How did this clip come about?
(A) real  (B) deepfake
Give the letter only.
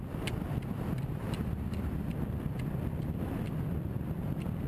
A